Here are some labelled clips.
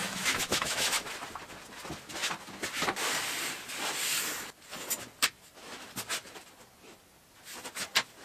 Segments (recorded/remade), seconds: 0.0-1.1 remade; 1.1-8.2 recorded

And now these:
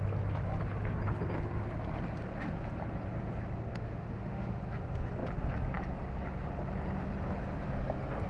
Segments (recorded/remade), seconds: 0.0-3.7 recorded; 3.7-4.6 remade; 4.6-8.3 recorded

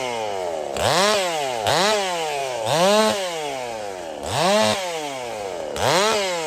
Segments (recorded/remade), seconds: 0.0-2.4 recorded; 2.4-3.0 remade; 3.0-6.5 recorded

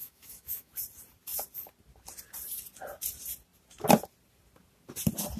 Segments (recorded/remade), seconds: 0.0-0.7 remade; 0.7-5.4 recorded

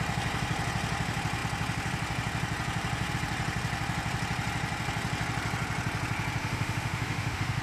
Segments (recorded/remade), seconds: 0.0-6.4 recorded; 6.4-7.6 remade

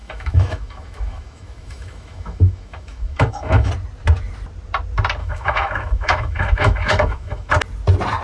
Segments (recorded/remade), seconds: 0.0-3.7 remade; 3.7-5.2 recorded; 5.2-7.5 remade; 7.5-8.2 recorded

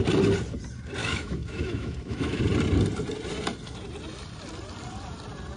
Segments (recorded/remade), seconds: 0.0-1.0 recorded; 1.0-2.4 remade; 2.4-5.6 recorded